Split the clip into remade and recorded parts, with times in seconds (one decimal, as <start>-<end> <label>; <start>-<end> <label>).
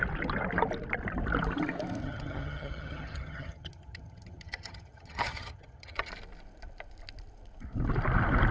0.0-2.0 recorded; 2.0-6.1 remade; 6.1-8.5 recorded